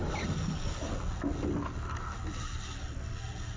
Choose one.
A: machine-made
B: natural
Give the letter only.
B